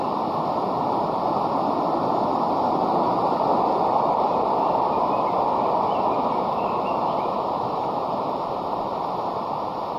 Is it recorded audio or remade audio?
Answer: recorded